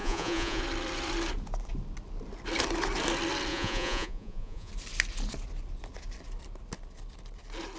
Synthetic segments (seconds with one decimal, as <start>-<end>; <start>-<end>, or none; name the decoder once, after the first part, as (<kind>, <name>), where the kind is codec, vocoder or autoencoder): 0.0-0.6 (vocoder, Vocos); 3.5-4.7